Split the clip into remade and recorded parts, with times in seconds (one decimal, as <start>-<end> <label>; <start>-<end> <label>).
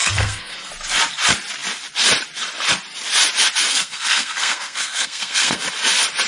0.0-0.7 remade; 0.7-3.7 recorded; 3.7-5.6 remade; 5.6-6.3 recorded